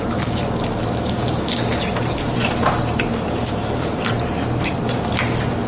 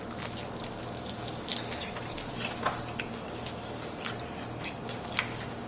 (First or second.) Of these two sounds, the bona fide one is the second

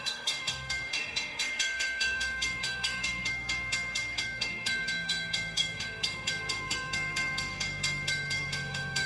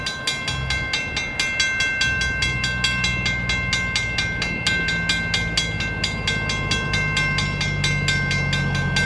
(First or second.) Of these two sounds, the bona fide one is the second